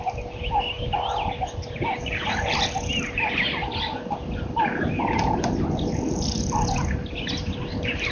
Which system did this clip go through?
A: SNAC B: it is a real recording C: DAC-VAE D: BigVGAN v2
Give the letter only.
B